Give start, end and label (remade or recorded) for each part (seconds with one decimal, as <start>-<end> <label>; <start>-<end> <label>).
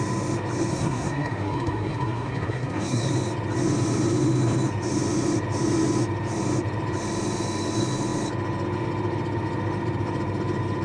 0.0-0.7 recorded; 0.7-3.1 remade; 3.1-10.8 recorded